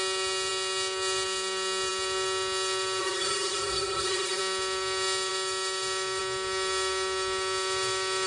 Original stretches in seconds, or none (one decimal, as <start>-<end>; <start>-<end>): 0.0-3.0; 4.4-8.3